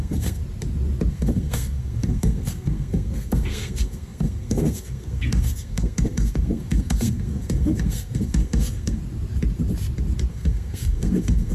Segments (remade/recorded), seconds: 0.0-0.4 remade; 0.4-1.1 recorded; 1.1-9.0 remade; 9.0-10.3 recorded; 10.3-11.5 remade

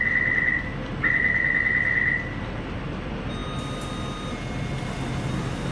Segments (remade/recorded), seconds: 0.0-5.7 recorded

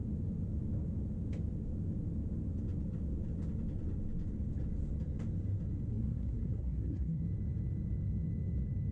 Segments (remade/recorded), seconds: 0.0-5.9 recorded; 5.9-7.2 remade; 7.2-8.9 recorded

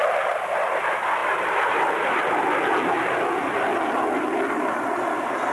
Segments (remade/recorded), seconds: 0.0-5.5 recorded